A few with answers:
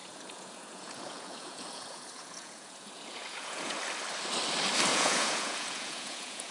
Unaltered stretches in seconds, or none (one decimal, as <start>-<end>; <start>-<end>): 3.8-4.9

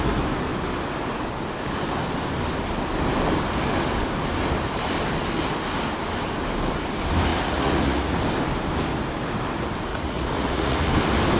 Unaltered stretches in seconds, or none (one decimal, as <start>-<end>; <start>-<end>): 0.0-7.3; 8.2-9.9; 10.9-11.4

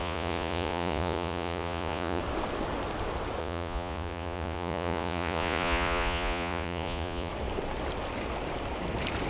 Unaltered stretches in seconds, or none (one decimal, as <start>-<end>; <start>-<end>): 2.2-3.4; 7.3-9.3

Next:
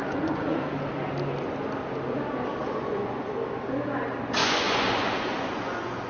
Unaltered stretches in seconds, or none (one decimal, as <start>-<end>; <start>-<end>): 0.7-2.6; 3.3-4.4